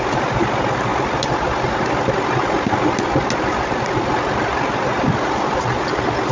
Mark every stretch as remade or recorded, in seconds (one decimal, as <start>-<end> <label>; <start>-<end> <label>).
0.0-6.3 recorded

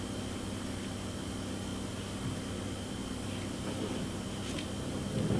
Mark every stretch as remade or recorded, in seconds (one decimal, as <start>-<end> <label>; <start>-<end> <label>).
0.0-5.4 recorded

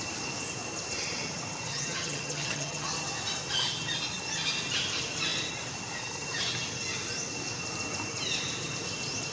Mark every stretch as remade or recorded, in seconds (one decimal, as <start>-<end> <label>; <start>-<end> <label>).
0.0-1.7 recorded; 1.7-3.0 remade; 3.0-9.3 recorded

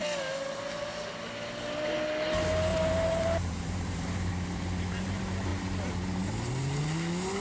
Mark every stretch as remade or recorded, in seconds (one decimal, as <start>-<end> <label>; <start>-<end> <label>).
0.0-2.7 recorded; 2.7-4.3 remade; 4.3-7.4 recorded